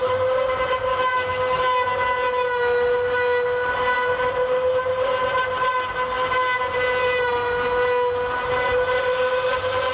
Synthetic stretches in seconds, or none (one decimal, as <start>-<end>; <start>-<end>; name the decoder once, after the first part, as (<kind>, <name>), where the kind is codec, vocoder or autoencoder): 0.9-1.6 (autoencoder, DAC-VAE)